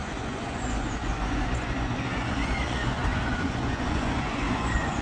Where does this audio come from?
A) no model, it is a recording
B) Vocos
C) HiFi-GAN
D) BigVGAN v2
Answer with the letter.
B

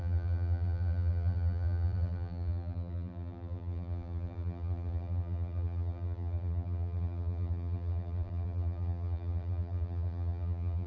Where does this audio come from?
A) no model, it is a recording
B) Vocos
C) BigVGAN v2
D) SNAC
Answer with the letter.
C